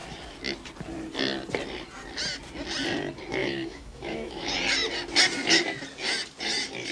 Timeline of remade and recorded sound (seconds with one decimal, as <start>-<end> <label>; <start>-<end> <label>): 0.0-3.4 recorded; 3.4-4.5 remade; 4.5-6.9 recorded